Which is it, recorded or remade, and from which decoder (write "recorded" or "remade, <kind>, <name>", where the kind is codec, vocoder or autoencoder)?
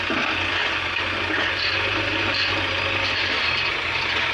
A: recorded